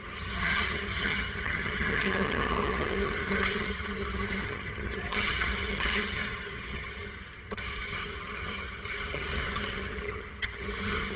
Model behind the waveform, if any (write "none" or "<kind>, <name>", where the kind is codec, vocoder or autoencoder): vocoder, HiFi-GAN